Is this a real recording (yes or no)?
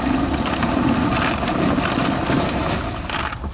yes